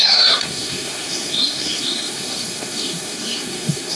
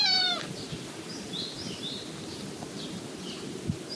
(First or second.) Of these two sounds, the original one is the second